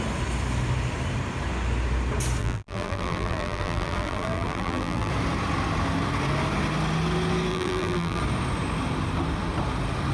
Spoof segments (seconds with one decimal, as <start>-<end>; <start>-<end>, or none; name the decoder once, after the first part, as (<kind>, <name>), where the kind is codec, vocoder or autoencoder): 2.4-5.1 (vocoder, BigVGAN v2); 7.5-8.2